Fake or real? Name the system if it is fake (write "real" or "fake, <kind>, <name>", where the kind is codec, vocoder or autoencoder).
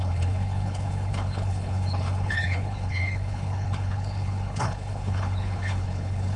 fake, codec, HILCodec